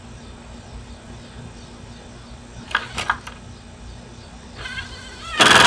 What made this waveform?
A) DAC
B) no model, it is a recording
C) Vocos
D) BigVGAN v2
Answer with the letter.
B